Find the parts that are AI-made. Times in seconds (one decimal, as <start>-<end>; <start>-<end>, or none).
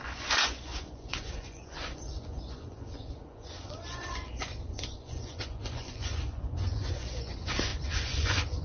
0.0-8.6